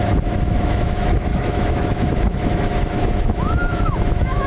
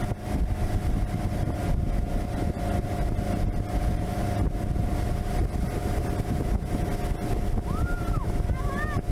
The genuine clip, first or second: second